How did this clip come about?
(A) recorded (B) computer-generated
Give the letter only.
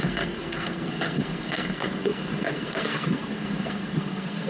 B